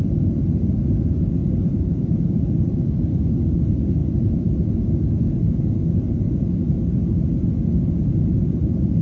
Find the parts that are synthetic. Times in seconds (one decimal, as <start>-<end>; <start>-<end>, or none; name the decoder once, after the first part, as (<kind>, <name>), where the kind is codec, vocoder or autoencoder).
1.4-2.3 (vocoder, BigVGAN v2)